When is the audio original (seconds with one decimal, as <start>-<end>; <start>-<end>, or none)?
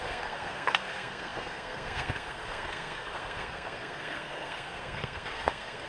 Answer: none